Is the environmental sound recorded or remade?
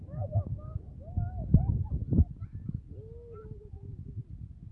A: recorded